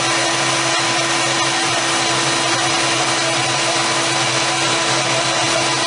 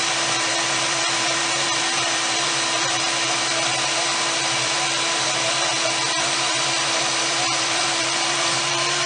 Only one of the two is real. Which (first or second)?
first